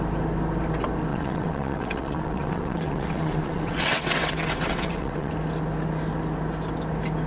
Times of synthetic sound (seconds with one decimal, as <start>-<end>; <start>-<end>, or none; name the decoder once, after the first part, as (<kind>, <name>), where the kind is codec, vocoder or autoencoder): 1.1-5.3 (vocoder, WaveNeXt)